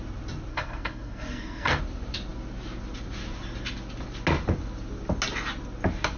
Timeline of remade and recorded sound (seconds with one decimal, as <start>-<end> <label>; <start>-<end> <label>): 0.0-0.5 recorded; 0.5-1.8 remade; 1.8-6.2 recorded

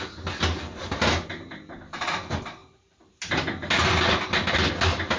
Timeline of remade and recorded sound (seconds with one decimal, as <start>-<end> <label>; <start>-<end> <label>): 0.0-5.2 recorded

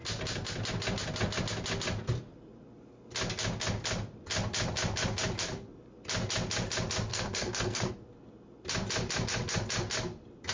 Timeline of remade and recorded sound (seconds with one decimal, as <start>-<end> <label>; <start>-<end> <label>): 0.0-7.1 recorded; 7.1-7.9 remade; 7.9-10.5 recorded

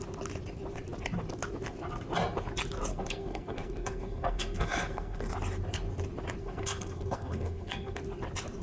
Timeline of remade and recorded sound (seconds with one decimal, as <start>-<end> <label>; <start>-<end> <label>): 0.0-2.9 recorded; 2.9-5.3 remade; 5.3-6.4 recorded; 6.4-8.0 remade; 8.0-8.6 recorded

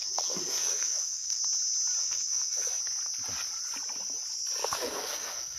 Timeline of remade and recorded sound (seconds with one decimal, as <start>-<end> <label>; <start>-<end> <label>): 0.0-1.4 remade; 1.4-2.0 recorded; 2.0-2.8 remade; 2.8-4.6 recorded; 4.6-5.6 remade

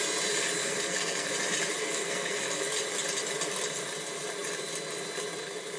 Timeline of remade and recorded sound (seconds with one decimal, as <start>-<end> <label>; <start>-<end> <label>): 0.0-0.6 recorded; 0.6-1.3 remade; 1.3-1.8 recorded; 1.8-2.6 remade; 2.6-5.8 recorded

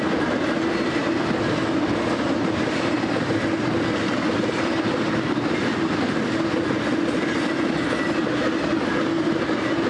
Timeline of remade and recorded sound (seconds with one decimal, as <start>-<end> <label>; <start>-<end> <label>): 0.0-9.9 recorded

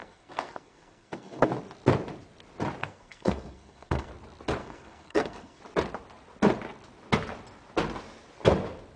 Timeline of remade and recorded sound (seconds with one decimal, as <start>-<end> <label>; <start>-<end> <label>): 0.0-1.5 remade; 1.5-2.8 recorded; 2.8-4.1 remade; 4.1-4.6 recorded; 4.6-5.6 remade; 5.6-9.0 recorded